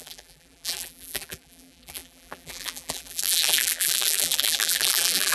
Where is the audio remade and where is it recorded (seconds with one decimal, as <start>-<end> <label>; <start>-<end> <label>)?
0.0-5.3 remade